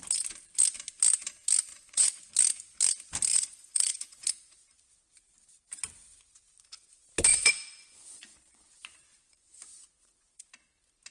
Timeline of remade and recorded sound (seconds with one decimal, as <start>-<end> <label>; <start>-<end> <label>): 0.0-1.7 recorded; 1.7-2.3 remade; 2.3-3.3 recorded; 3.3-4.9 remade; 4.9-7.3 recorded; 7.3-10.5 remade; 10.5-11.1 recorded